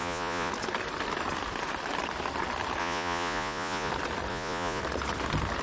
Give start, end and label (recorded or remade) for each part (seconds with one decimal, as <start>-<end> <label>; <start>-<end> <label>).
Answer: 0.0-0.5 remade; 0.5-2.8 recorded; 2.8-3.9 remade; 3.9-4.3 recorded; 4.3-4.8 remade; 4.8-5.6 recorded